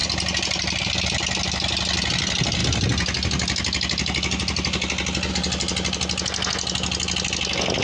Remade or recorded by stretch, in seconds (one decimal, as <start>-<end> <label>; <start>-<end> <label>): 0.0-7.8 recorded